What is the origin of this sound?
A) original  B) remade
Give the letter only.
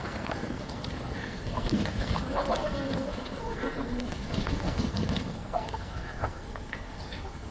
B